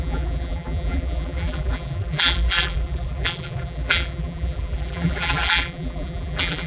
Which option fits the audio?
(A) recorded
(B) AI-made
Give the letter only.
B